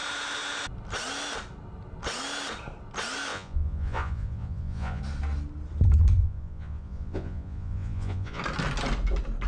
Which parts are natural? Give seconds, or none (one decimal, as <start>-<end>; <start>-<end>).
0.0-3.3; 5.0-6.2; 8.4-9.5